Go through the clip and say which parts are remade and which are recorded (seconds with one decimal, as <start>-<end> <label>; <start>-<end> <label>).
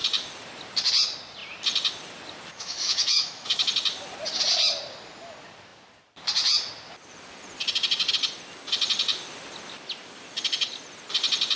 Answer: 0.0-2.5 recorded; 2.5-3.7 remade; 3.7-11.6 recorded